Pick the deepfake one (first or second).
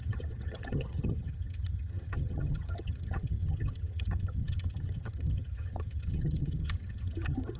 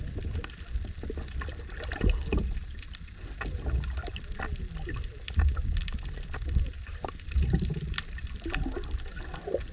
first